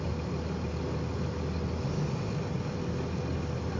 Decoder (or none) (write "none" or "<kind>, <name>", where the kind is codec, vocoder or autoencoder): none